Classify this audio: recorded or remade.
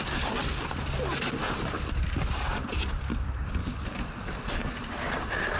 remade